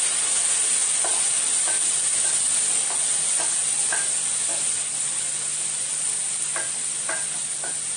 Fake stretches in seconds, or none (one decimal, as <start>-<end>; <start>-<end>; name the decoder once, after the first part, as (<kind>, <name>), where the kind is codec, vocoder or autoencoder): none